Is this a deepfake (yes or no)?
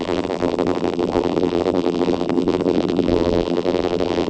yes